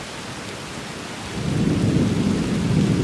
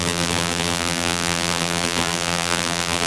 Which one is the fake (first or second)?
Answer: second